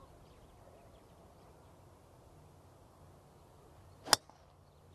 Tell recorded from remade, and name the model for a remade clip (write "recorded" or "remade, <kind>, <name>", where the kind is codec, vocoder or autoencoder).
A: recorded